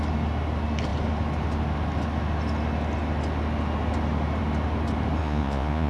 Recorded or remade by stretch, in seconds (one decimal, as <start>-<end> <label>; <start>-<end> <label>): 0.0-5.2 recorded; 5.2-5.9 remade